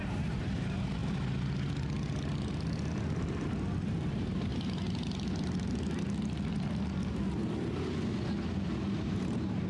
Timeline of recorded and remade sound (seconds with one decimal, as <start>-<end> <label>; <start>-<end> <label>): 0.0-1.0 remade; 1.0-3.8 recorded; 3.8-4.5 remade; 4.5-8.5 recorded; 8.5-9.7 remade